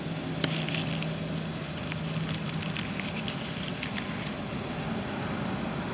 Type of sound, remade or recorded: recorded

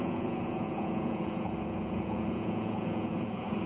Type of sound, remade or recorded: remade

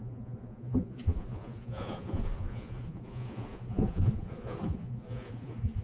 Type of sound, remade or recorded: remade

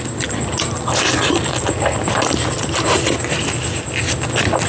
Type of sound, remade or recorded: recorded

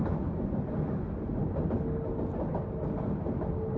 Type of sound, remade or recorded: recorded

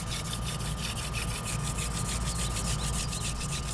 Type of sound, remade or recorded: recorded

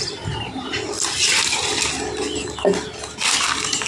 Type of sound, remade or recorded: recorded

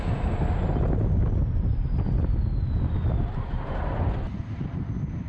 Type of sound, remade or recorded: recorded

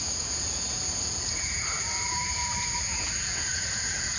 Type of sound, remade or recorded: remade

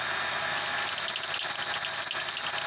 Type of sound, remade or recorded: recorded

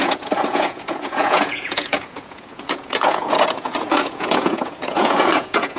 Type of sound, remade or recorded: remade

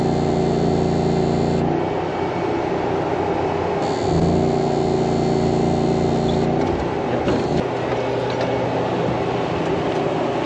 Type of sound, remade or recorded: recorded